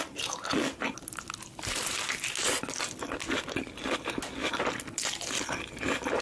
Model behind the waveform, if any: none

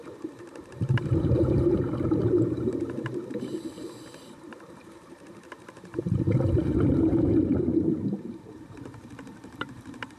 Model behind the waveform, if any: vocoder, BigVGAN v2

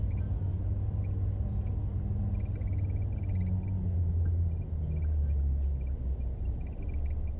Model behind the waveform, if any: none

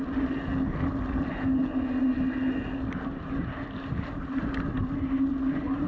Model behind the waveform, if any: none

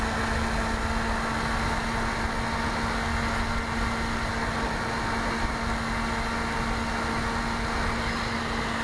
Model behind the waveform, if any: none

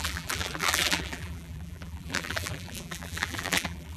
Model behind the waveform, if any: vocoder, BigVGAN v2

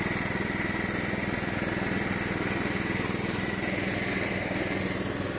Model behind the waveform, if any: none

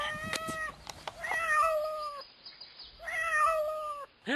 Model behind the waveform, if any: none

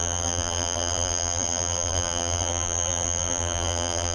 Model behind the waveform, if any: vocoder, BigVGAN v2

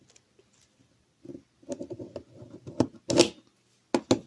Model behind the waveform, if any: none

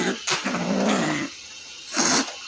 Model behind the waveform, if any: none